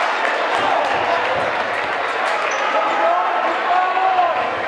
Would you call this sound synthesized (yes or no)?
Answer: no